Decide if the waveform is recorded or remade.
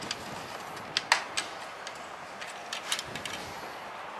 recorded